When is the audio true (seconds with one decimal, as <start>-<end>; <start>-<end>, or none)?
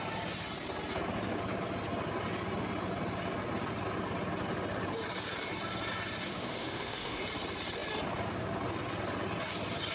0.0-6.3; 7.2-9.9